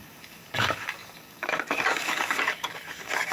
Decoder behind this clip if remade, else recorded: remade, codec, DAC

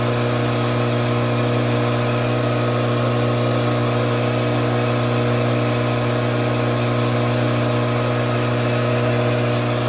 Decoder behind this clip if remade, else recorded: recorded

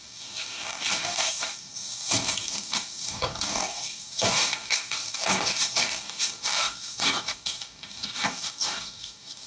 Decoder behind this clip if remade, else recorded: remade, codec, DAC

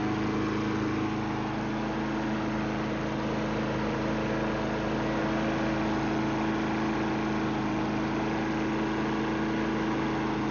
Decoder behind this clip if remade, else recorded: recorded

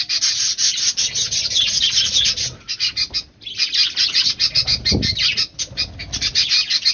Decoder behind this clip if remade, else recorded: recorded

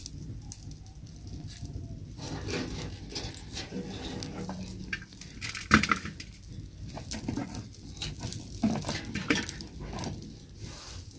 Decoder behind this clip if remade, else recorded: recorded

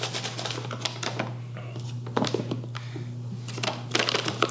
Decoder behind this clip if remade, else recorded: recorded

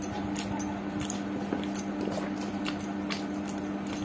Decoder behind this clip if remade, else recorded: recorded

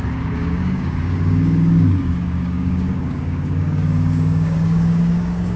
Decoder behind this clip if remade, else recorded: remade, codec, DAC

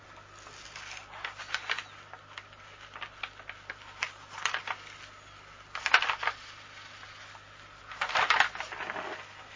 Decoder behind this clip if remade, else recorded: recorded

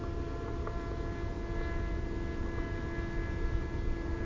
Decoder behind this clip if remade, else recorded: recorded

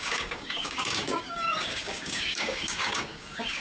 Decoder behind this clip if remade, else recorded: remade, codec, DAC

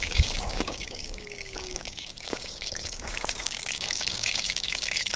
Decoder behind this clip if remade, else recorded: remade, codec, DAC